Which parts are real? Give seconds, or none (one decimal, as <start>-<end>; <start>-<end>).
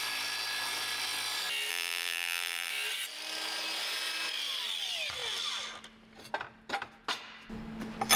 0.0-1.7; 2.7-8.2